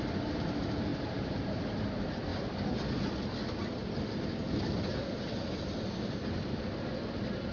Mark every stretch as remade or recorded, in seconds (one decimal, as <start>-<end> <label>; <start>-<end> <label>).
0.0-0.9 recorded; 0.9-1.6 remade; 1.6-4.9 recorded; 4.9-6.2 remade; 6.2-7.5 recorded